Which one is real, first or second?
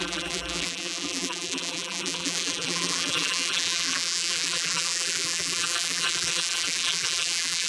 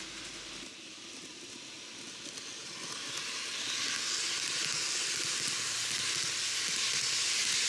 second